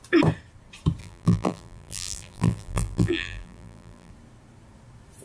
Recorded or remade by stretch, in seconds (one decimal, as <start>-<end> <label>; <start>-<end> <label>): 0.0-1.0 recorded; 1.0-4.1 remade; 4.1-5.2 recorded